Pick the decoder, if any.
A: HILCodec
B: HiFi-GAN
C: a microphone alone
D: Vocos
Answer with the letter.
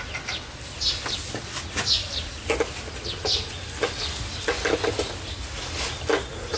C